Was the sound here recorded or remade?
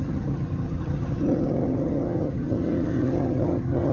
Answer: remade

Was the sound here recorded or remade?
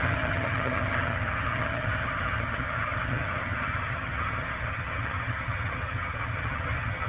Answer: remade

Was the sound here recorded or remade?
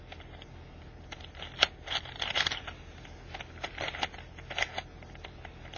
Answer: recorded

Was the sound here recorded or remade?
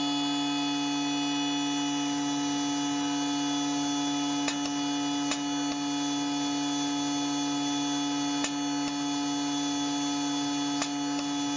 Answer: recorded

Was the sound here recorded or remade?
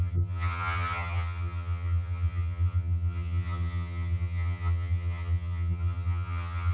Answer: remade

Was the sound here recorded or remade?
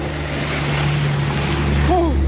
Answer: recorded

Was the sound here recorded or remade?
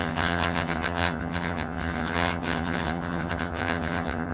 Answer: remade